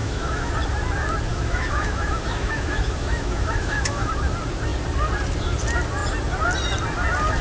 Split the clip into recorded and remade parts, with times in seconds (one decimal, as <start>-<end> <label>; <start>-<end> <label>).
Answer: 0.0-0.5 remade; 0.5-1.3 recorded; 1.3-4.1 remade; 4.1-7.4 recorded